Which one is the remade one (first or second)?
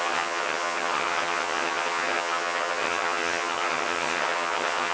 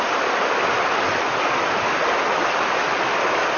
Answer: first